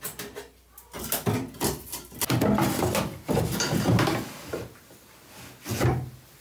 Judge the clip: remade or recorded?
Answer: recorded